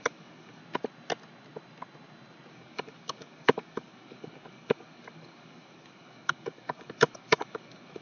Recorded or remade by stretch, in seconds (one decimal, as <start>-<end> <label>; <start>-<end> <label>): 0.0-0.6 remade; 0.6-2.5 recorded; 2.5-8.0 remade